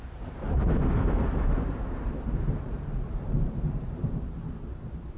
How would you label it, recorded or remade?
remade